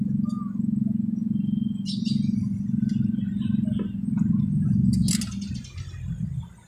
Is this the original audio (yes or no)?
yes